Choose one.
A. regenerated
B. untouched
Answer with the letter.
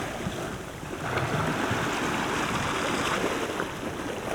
B